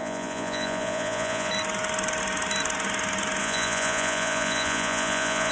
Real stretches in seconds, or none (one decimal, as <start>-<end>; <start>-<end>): 1.5-3.4